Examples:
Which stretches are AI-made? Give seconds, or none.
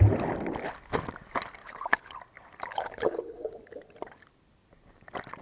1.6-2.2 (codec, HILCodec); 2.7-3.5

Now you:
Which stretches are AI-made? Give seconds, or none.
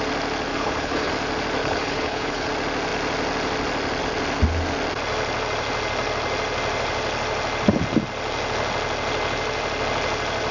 0.5-1.1 (codec, HILCodec); 1.6-2.5